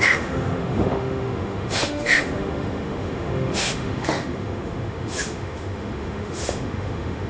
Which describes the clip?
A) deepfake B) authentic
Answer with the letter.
A